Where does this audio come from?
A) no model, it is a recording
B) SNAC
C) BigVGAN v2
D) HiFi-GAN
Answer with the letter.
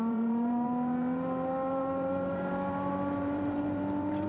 C